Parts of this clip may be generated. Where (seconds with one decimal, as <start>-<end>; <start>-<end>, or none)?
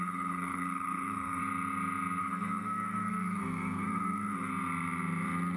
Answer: 0.0-1.4; 2.2-4.5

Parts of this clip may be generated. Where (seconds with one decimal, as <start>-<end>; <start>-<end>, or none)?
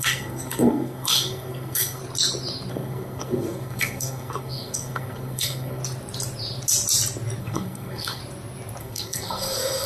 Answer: 0.0-2.0; 2.7-5.8; 7.4-8.2; 8.8-9.9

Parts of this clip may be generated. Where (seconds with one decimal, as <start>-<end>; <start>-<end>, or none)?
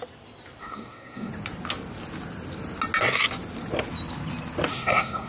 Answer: 0.6-1.3; 4.7-5.3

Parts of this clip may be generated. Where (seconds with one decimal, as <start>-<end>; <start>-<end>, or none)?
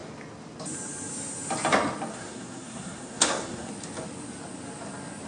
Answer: 2.1-3.7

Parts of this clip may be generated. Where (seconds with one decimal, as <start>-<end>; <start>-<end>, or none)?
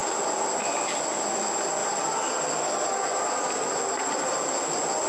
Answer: none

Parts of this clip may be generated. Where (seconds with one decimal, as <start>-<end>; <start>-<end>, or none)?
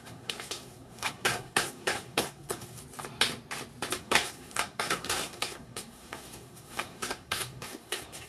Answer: 0.0-2.8; 4.0-8.3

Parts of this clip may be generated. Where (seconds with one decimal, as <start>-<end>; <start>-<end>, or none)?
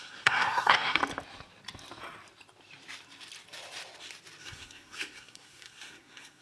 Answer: 0.0-1.0; 4.4-6.4